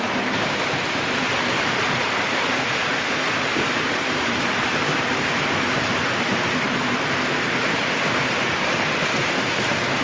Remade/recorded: remade